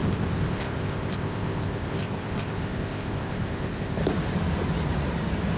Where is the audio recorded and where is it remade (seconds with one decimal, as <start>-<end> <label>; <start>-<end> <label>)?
0.0-4.0 remade; 4.0-5.6 recorded